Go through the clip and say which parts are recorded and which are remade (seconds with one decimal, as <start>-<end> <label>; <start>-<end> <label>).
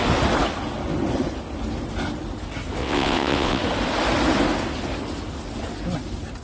0.0-2.8 recorded; 2.8-3.6 remade; 3.6-6.4 recorded